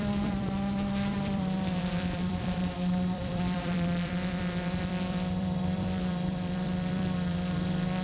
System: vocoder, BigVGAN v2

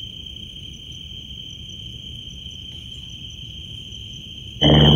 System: none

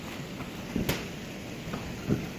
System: none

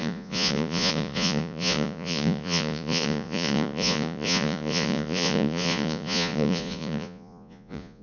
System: vocoder, Vocos